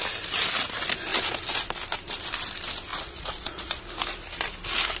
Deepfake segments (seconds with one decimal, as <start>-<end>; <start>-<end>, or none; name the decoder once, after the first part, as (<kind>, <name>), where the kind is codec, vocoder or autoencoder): 2.9-3.8 (vocoder, Vocos)